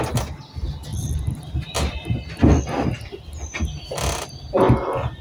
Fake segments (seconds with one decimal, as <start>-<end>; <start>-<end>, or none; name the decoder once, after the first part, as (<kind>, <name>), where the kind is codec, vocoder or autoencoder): none